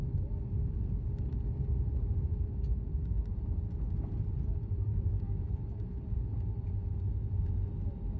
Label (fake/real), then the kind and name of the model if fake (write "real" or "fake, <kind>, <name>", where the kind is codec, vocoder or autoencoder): fake, vocoder, BigVGAN v2